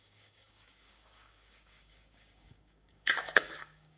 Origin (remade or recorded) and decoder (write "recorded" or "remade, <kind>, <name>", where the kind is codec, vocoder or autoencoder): remade, codec, DAC